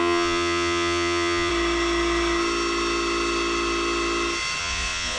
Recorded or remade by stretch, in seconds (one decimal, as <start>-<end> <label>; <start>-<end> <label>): 0.0-1.5 remade; 1.5-4.6 recorded; 4.6-5.2 remade